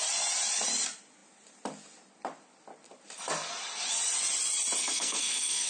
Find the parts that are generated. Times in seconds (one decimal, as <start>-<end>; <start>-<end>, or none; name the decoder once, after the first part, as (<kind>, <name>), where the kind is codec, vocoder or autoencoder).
4.8-5.7 (codec, SNAC)